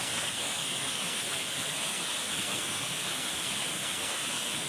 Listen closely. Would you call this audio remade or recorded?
remade